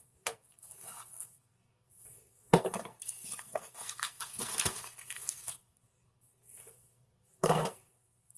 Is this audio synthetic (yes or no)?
yes